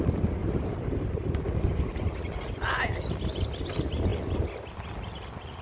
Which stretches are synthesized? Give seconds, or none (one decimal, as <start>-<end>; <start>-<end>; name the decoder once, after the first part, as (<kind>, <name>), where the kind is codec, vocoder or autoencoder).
0.4-1.3 (vocoder, BigVGAN v2)